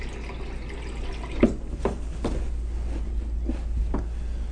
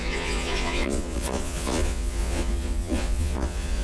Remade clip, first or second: second